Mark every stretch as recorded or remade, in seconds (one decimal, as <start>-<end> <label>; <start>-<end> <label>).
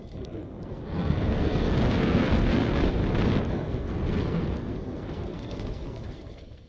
0.0-3.0 remade; 3.0-3.5 recorded; 3.5-6.7 remade